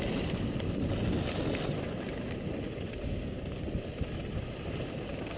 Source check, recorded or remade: recorded